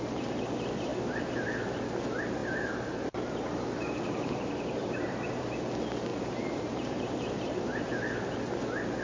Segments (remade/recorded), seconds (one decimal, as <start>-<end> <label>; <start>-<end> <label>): 0.0-2.4 recorded; 2.4-5.4 remade; 5.4-6.1 recorded; 6.1-7.9 remade; 7.9-9.0 recorded